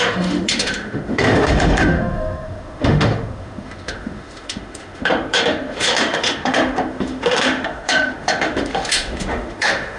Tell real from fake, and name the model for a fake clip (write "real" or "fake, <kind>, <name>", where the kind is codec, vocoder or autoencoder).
fake, autoencoder, DAC-VAE